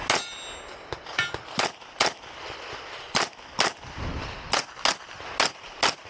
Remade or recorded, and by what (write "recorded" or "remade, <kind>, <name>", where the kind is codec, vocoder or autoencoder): recorded